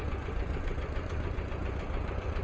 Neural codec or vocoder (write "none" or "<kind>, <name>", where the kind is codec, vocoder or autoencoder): vocoder, Vocos